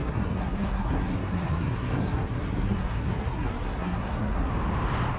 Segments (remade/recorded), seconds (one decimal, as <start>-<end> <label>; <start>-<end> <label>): 0.0-4.5 remade; 4.5-5.2 recorded

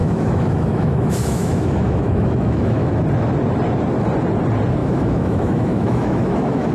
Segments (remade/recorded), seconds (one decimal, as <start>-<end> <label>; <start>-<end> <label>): 0.0-2.9 remade; 2.9-4.8 recorded; 4.8-6.7 remade

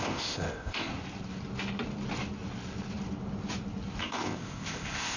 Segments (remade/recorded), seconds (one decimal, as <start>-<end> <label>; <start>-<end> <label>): 0.0-0.9 remade; 0.9-4.0 recorded; 4.0-5.2 remade

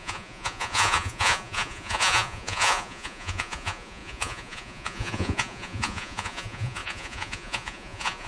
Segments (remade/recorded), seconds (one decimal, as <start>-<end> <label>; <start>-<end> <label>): 0.0-8.3 remade